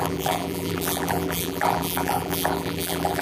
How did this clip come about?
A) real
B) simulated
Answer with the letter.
B